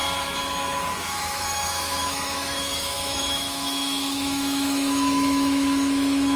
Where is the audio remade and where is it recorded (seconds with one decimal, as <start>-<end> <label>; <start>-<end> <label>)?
0.0-1.0 recorded; 1.0-6.4 remade